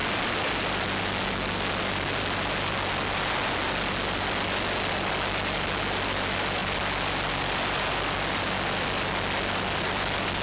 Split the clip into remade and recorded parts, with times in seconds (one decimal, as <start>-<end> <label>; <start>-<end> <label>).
0.0-10.4 recorded